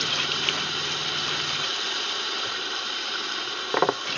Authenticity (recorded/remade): remade